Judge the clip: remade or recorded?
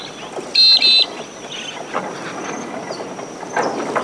recorded